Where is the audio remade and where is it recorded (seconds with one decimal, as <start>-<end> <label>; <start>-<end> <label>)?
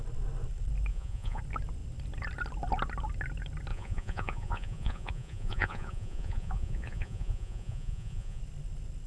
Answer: 0.0-0.9 recorded; 0.9-1.4 remade; 1.4-3.7 recorded; 3.7-8.4 remade; 8.4-9.1 recorded